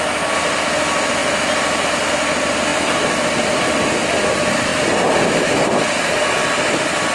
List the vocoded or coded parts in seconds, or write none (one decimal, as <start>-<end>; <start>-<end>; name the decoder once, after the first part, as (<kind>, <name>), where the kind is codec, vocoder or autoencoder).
2.7-3.9 (vocoder, BigVGAN v2); 4.7-6.1